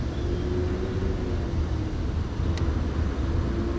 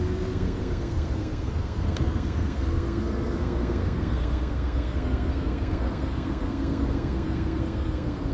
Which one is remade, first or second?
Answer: second